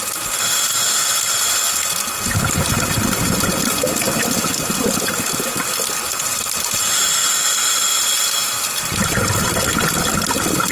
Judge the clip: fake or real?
real